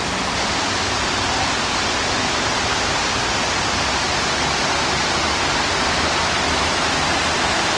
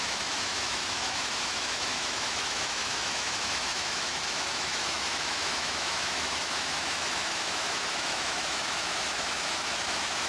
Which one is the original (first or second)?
first